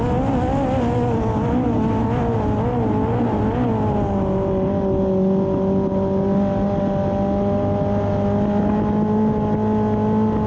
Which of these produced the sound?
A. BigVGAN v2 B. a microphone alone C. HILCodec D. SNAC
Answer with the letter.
B